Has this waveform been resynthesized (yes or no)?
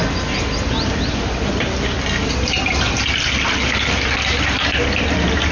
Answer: no